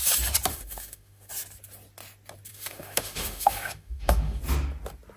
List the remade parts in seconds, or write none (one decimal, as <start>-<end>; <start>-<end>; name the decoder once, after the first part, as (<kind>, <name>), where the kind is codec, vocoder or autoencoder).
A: 0.5-1.3 (autoencoder, DAC-VAE); 2.5-4.4